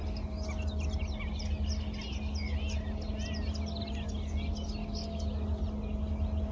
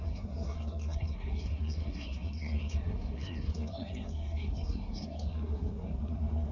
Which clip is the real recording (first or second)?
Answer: first